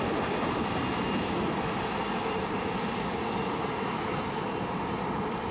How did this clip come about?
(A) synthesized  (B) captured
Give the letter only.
B